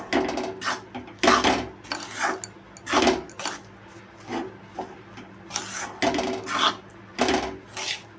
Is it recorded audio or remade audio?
recorded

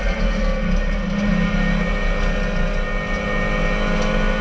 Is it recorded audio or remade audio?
recorded